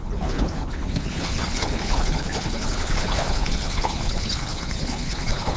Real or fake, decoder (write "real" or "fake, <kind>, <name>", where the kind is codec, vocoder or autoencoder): fake, codec, HILCodec